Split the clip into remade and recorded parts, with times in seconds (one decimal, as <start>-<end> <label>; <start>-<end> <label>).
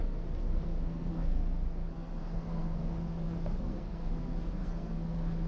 0.0-5.5 remade